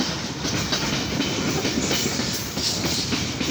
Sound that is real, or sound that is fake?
real